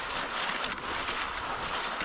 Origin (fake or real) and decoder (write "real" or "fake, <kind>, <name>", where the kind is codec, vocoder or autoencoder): real